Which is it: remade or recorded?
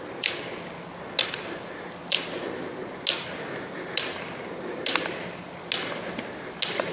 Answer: recorded